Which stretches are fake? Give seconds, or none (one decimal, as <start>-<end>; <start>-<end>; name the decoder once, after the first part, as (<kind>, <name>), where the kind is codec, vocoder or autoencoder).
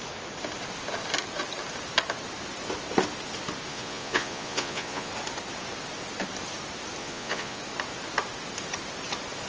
3.7-5.1 (vocoder, Vocos); 7.0-7.6